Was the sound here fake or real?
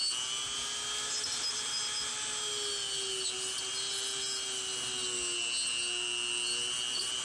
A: real